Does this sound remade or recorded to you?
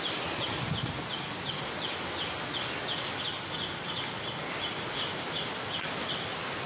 recorded